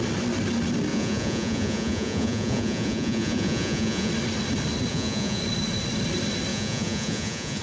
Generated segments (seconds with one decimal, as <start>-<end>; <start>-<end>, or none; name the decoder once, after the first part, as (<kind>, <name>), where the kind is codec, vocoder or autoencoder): 0.9-4.1 (vocoder, Vocos); 4.9-5.4; 6.5-7.6